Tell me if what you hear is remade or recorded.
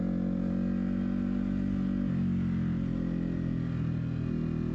recorded